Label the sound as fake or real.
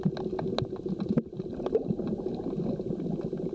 real